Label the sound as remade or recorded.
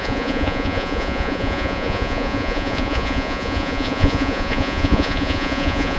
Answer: remade